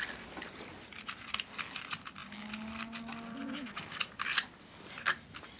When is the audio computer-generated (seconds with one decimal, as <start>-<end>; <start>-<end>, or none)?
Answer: none